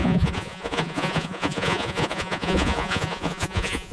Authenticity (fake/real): fake